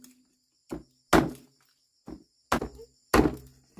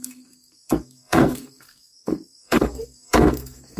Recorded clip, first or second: first